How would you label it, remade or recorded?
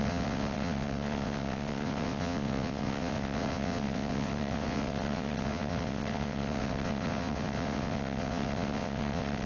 remade